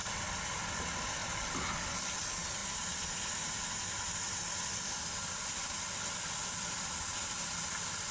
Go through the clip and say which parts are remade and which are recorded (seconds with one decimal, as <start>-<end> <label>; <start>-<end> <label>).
0.0-8.1 recorded

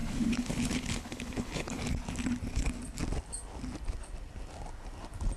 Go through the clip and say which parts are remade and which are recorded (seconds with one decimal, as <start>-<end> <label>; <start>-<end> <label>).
0.0-1.8 remade; 1.8-5.4 recorded

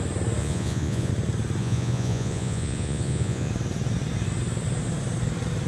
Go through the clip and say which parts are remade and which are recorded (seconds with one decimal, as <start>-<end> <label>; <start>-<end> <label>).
0.0-0.4 recorded; 0.4-1.1 remade; 1.1-1.6 recorded; 1.6-3.5 remade; 3.5-5.7 recorded